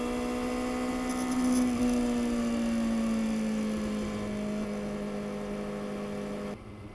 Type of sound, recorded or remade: recorded